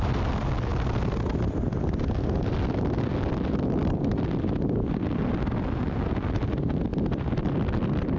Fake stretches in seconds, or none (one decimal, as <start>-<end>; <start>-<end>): none